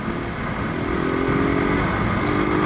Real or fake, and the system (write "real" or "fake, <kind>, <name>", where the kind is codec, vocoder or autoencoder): real